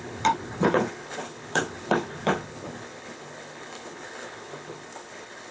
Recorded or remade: remade